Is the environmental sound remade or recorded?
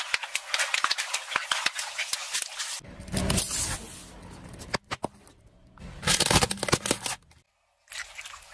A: recorded